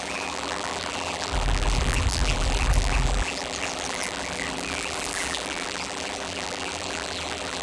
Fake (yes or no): yes